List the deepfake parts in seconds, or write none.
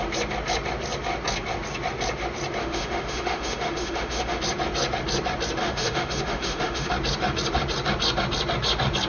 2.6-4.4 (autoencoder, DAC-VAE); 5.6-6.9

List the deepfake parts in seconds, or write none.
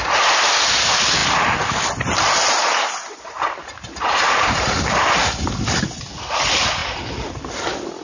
none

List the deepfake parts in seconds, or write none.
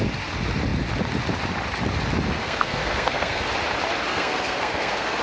2.4-3.5 (codec, SNAC); 4.1-5.2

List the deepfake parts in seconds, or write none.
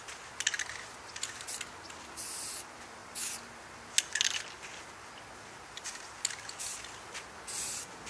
none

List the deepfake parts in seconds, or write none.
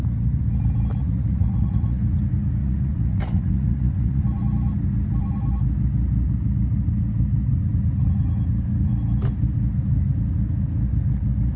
1.0-2.0 (vocoder, Vocos); 2.6-4.2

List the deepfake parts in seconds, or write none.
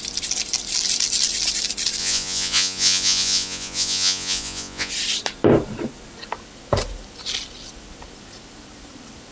2.0-4.9 (vocoder, Vocos)